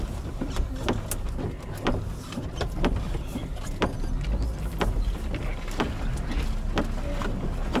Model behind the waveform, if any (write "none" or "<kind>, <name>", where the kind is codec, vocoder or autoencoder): none